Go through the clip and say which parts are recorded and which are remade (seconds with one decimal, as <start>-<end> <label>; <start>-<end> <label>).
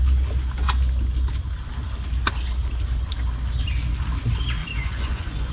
0.0-4.6 recorded; 4.6-5.5 remade